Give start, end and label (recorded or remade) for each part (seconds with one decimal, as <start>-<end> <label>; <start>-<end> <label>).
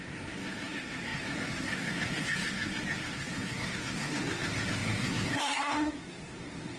0.0-6.8 remade